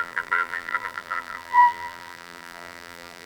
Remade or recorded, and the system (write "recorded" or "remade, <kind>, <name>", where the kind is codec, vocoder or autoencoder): remade, vocoder, BigVGAN v2